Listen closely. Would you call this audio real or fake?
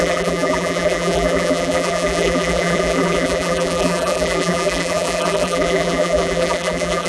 fake